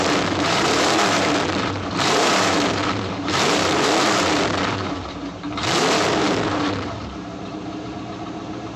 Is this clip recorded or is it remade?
remade